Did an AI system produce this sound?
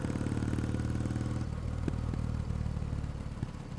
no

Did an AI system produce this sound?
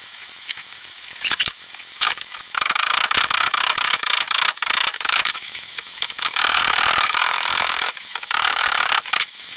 yes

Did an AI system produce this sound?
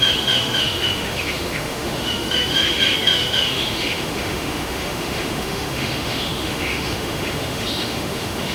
yes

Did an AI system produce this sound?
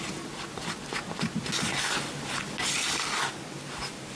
no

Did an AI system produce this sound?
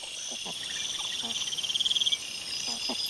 no